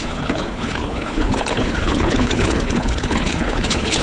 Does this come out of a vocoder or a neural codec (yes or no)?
yes